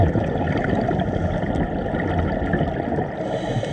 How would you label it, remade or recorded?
recorded